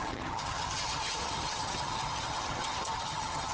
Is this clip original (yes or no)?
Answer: no